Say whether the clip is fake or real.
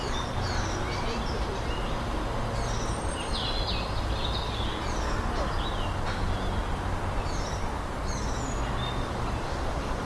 real